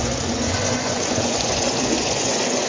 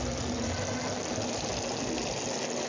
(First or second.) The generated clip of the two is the first